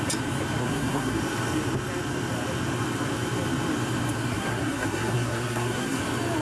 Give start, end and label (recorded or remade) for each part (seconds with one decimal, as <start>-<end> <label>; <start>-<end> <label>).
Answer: 0.0-0.6 recorded; 0.6-1.2 remade; 1.2-4.3 recorded; 4.3-6.0 remade; 6.0-6.4 recorded